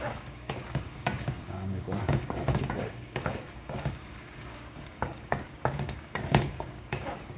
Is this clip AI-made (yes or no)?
yes